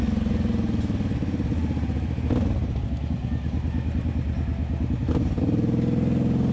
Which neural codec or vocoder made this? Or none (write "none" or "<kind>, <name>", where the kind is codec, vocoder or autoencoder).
none